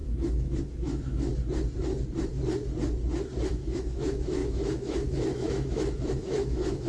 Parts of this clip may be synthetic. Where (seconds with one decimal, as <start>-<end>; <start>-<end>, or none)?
0.0-1.3; 3.5-6.9